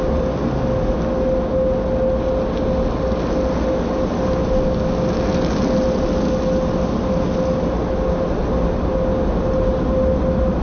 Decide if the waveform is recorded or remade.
recorded